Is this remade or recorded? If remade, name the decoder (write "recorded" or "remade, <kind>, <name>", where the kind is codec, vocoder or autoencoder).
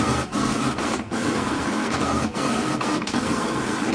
remade, codec, SNAC